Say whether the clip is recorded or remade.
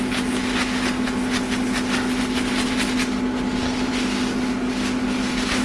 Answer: recorded